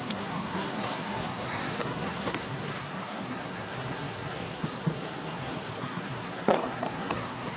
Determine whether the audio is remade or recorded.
remade